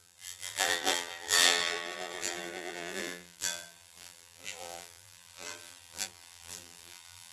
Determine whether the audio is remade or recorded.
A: remade